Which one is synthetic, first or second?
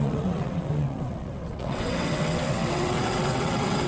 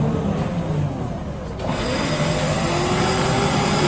first